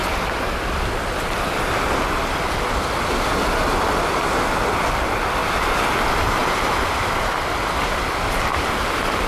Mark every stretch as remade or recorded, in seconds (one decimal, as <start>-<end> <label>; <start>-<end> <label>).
0.0-9.3 recorded